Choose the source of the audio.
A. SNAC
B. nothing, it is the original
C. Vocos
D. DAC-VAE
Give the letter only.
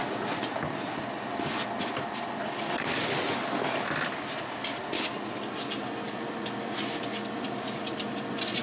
B